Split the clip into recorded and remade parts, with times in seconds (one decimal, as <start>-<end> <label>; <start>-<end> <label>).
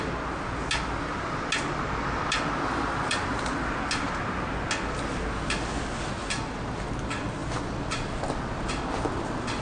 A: 0.0-9.6 recorded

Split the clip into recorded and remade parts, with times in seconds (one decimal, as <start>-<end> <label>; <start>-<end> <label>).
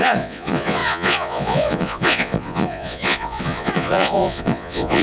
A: 0.0-5.0 remade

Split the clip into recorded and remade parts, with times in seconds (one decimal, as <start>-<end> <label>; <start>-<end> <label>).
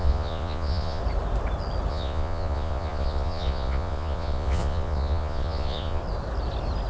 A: 0.0-1.0 remade; 1.0-1.9 recorded; 1.9-6.0 remade; 6.0-6.9 recorded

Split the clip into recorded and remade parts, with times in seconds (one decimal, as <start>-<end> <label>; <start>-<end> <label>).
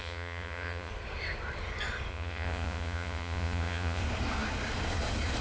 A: 0.0-0.9 remade; 0.9-2.1 recorded; 2.1-4.0 remade; 4.0-5.4 recorded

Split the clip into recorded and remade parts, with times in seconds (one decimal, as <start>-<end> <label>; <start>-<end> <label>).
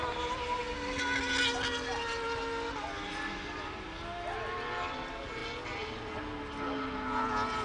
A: 0.0-7.6 recorded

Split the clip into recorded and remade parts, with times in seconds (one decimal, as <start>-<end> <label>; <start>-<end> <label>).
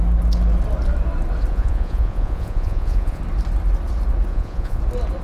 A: 0.0-1.5 recorded; 1.5-3.2 remade; 3.2-4.3 recorded; 4.3-4.8 remade; 4.8-5.2 recorded